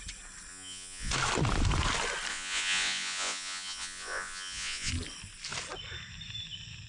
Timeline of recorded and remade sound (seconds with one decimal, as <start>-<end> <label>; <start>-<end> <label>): 0.0-0.5 recorded; 0.5-1.1 remade; 1.1-2.3 recorded; 2.3-4.9 remade; 4.9-6.9 recorded